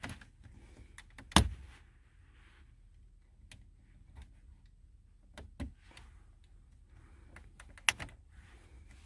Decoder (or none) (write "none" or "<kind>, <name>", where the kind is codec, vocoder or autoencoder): none